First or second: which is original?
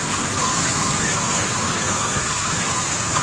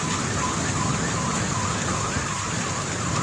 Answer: second